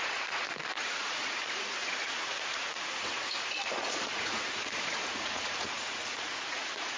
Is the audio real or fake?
fake